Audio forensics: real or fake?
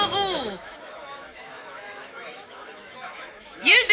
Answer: fake